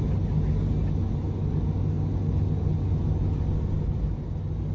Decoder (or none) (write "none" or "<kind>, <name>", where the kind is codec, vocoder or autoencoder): none